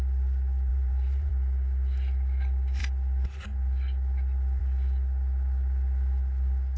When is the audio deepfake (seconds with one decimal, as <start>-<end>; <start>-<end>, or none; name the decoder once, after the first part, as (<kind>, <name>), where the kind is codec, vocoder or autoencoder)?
0.7-1.3 (vocoder, BigVGAN v2)

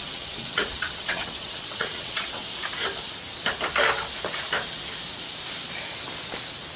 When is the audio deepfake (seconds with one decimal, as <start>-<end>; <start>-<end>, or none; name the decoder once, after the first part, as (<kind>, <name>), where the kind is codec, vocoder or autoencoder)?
0.0-2.4 (vocoder, WaveNeXt)

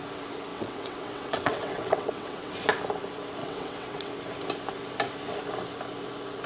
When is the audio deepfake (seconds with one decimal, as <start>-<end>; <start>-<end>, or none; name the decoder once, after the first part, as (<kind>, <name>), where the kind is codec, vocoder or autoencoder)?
0.5-2.5 (vocoder, WaveNeXt); 3.4-4.1